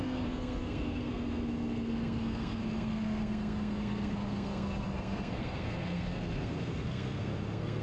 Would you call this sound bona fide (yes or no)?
no